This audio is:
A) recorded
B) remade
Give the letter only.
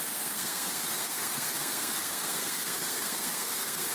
B